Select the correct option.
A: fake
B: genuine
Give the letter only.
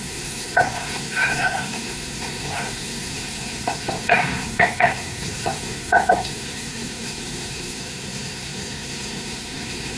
A